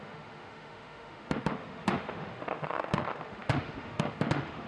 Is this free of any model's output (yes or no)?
no